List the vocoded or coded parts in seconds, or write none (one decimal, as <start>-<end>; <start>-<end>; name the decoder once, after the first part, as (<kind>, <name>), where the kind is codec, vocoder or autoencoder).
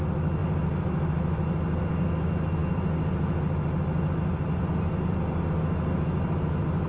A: none